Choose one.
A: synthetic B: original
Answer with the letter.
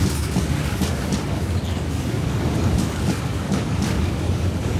A